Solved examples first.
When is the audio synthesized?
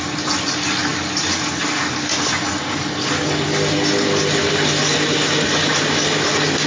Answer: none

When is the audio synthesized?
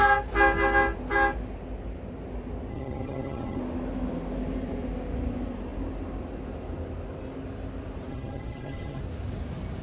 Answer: 2.7-3.6 (vocoder, HiFi-GAN); 8.1-9.0